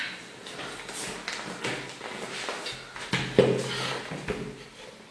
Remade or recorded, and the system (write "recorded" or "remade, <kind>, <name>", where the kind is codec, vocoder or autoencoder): recorded